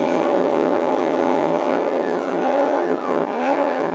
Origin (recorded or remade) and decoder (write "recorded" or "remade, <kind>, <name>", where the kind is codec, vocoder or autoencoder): remade, vocoder, HiFi-GAN